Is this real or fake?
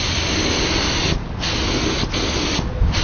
real